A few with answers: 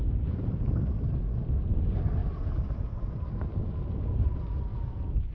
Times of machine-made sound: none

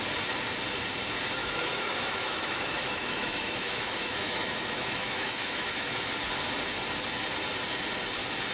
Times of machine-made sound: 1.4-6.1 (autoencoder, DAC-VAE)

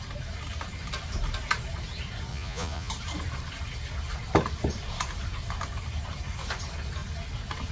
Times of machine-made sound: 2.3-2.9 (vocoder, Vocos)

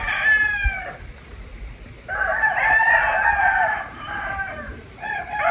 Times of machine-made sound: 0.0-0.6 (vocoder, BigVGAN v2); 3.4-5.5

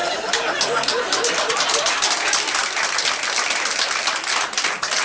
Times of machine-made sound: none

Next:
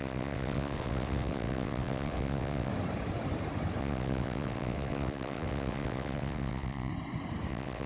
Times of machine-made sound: 0.0-2.7 (vocoder, WaveNeXt); 3.8-6.9; 7.5-7.9